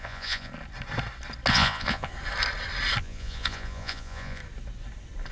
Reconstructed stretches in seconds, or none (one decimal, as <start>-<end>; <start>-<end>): 0.0-0.5; 1.5-2.1; 3.0-4.4